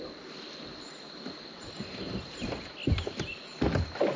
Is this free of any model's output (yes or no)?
yes